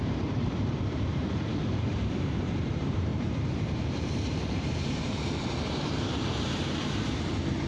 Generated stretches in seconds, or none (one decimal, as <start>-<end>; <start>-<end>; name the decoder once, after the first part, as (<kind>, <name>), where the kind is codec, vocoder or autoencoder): 0.0-7.7 (vocoder, BigVGAN v2)